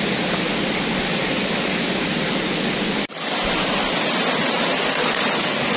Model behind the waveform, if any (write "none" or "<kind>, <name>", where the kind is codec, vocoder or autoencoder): none